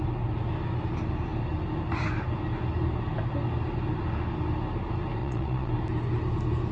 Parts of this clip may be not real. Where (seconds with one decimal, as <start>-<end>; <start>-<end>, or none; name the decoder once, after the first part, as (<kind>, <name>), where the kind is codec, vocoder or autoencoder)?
5.2-5.7 (vocoder, Vocos)